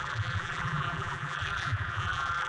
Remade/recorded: remade